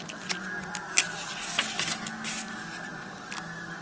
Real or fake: real